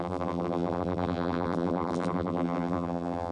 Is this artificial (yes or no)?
yes